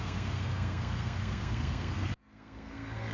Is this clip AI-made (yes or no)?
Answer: yes